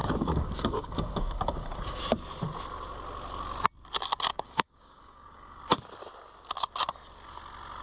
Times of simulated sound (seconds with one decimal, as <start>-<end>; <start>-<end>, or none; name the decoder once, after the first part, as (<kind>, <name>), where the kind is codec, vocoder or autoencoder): 0.0-2.0 (codec, DAC); 4.3-5.6